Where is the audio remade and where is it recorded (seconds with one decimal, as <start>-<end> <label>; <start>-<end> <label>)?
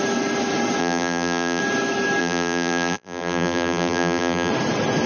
0.0-0.8 recorded; 0.8-1.6 remade; 1.6-2.2 recorded; 2.2-4.5 remade; 4.5-5.1 recorded